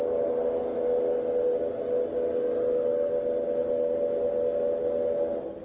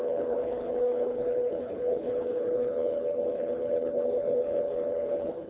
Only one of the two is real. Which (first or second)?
first